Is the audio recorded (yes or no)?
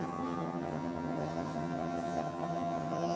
no